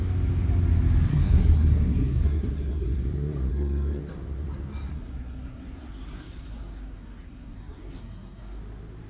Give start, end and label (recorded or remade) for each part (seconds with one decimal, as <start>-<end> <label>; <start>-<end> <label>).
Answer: 0.0-1.1 recorded; 1.1-3.0 remade; 3.0-3.5 recorded; 3.5-4.0 remade; 4.0-4.9 recorded; 4.9-8.6 remade; 8.6-9.1 recorded